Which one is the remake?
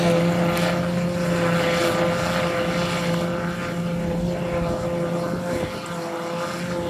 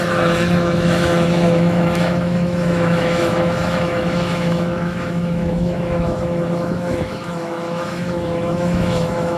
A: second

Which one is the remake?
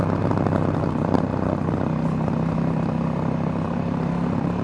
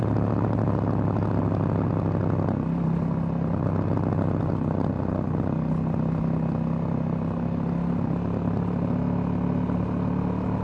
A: first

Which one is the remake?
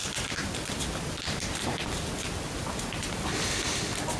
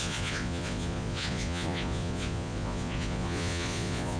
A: second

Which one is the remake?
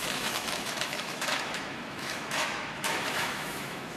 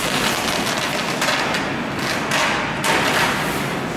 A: first